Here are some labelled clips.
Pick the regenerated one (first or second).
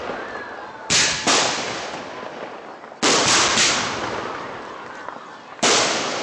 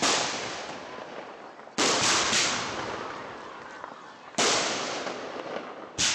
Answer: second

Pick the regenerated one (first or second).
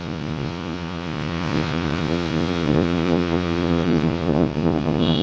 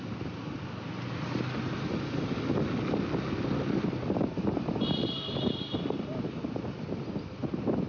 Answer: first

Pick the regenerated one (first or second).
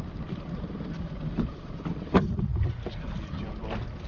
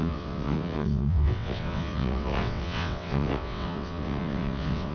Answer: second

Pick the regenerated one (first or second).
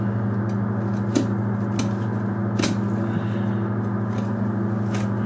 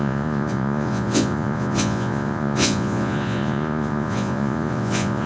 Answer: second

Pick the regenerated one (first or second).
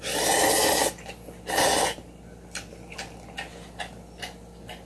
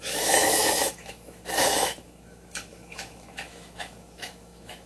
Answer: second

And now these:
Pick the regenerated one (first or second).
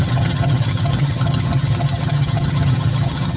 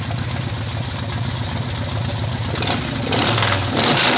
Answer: first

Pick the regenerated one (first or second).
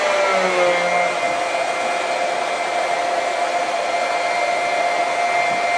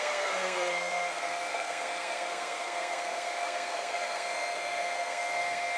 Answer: second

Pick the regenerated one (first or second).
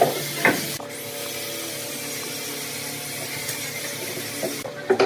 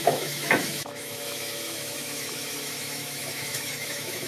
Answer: second